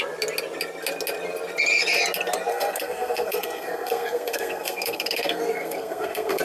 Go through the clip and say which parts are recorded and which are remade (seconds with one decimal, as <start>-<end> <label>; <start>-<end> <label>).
0.0-2.5 recorded; 2.5-6.4 remade